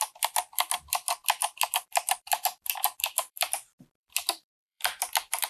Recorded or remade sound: remade